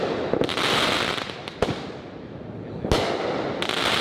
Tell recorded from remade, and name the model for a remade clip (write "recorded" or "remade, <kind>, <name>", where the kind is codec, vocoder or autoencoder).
recorded